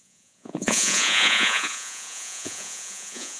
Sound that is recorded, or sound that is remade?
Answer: remade